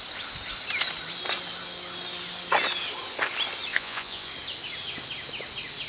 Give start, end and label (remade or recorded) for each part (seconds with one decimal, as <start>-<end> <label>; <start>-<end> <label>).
0.0-3.7 recorded; 3.7-4.3 remade; 4.3-5.9 recorded